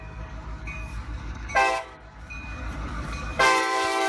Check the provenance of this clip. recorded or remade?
remade